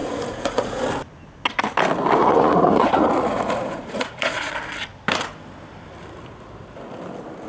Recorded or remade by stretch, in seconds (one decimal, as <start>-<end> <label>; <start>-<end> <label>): 0.0-0.8 remade; 0.8-2.2 recorded; 2.2-4.5 remade; 4.5-7.5 recorded